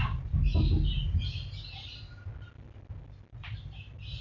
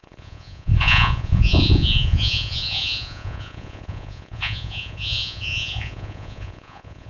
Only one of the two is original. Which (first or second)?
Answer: first